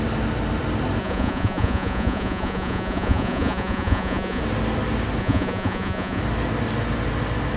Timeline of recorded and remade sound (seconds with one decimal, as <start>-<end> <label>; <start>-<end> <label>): 0.0-1.0 recorded; 1.0-4.4 remade; 4.4-5.2 recorded; 5.2-6.2 remade; 6.2-7.6 recorded